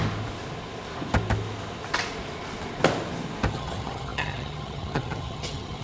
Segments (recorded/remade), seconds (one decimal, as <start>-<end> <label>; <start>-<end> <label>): 0.0-3.5 recorded; 3.5-5.8 remade